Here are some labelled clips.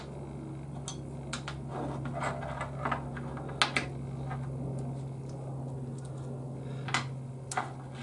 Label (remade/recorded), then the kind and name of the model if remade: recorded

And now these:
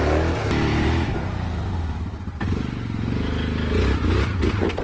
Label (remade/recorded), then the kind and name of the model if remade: recorded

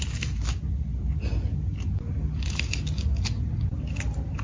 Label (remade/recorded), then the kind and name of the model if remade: recorded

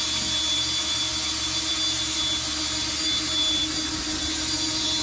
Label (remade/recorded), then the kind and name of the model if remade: recorded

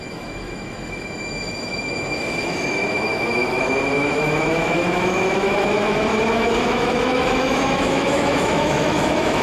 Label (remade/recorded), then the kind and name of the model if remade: remade, autoencoder, DAC-VAE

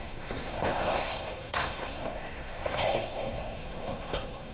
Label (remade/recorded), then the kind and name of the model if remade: remade, codec, SNAC